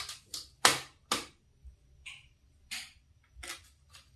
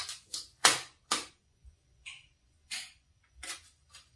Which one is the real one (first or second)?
first